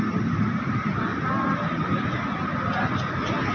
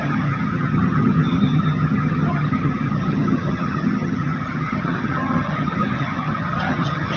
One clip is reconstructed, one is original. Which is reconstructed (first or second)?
second